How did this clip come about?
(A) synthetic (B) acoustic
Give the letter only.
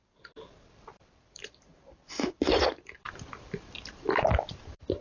A